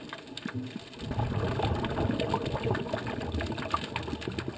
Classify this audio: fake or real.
real